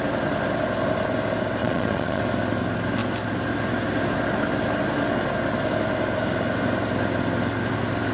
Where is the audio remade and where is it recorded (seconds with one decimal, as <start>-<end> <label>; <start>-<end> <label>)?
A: 0.0-1.6 recorded; 1.6-2.2 remade; 2.2-8.1 recorded